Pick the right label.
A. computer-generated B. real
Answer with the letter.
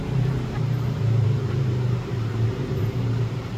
A